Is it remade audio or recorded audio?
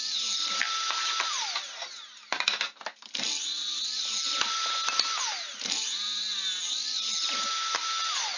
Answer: recorded